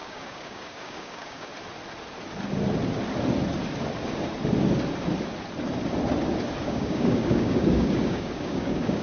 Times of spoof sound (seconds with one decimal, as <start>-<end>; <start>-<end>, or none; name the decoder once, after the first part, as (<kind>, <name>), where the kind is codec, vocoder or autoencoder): 0.0-1.5 (codec, DAC); 6.6-9.0